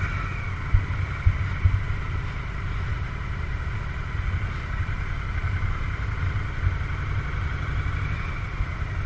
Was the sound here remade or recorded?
recorded